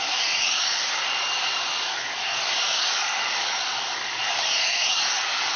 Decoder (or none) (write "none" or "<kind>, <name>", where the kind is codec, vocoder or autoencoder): codec, DAC